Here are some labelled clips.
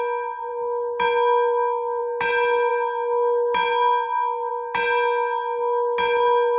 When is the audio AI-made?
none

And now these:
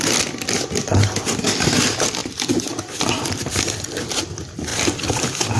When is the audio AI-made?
none

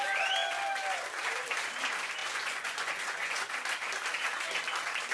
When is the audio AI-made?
2.2-3.5

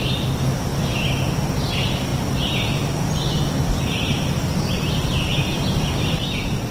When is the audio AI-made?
none

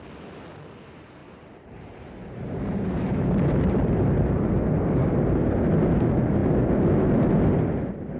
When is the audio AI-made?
1.2-4.5